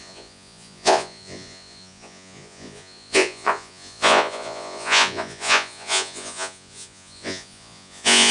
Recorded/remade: remade